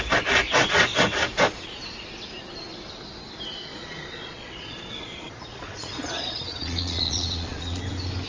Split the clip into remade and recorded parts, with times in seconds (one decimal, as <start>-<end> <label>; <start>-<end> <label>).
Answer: 0.0-3.7 recorded; 3.7-7.8 remade; 7.8-8.3 recorded